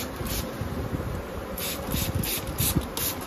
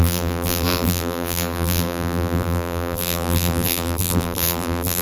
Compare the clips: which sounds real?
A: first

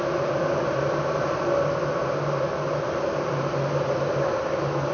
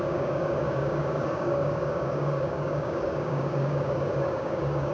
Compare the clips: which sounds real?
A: first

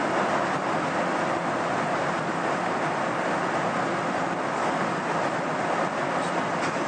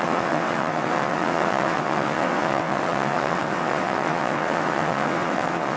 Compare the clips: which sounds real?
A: first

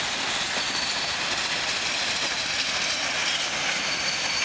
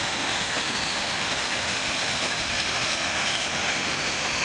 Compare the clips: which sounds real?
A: first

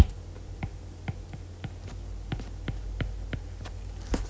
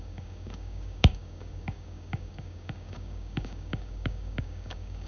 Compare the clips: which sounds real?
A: first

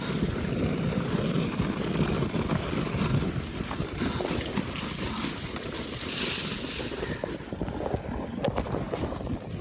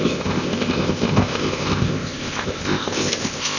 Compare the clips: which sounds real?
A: first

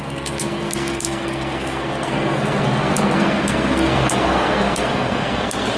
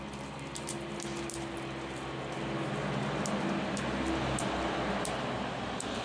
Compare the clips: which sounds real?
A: second